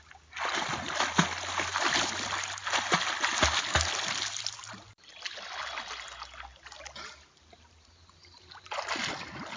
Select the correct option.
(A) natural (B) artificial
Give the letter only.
A